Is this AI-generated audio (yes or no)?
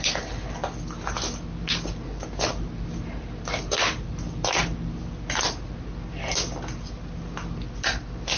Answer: no